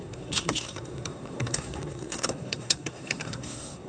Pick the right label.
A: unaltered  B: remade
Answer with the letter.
B